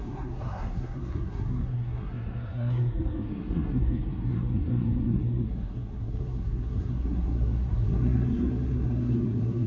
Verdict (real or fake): fake